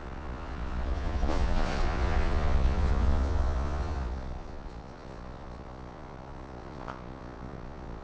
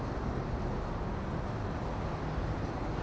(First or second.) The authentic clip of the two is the second